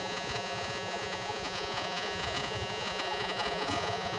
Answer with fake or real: fake